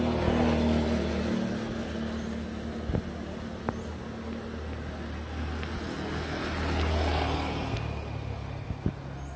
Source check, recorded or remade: recorded